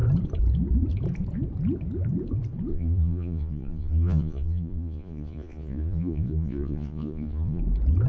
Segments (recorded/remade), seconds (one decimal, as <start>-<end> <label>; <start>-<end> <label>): 0.0-2.7 recorded; 2.7-7.6 remade; 7.6-8.1 recorded